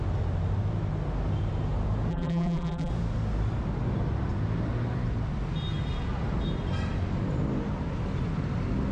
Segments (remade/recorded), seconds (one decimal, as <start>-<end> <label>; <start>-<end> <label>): 0.0-2.1 recorded; 2.1-2.9 remade; 2.9-8.9 recorded